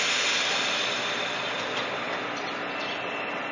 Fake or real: real